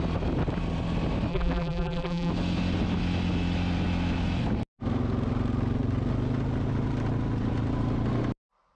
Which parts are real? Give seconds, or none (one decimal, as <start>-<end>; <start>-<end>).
0.0-1.3; 2.3-8.8